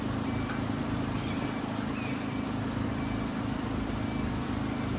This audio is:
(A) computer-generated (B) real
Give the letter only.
B